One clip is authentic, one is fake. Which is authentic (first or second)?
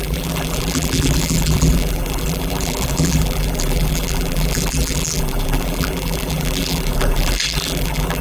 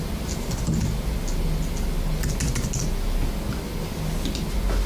second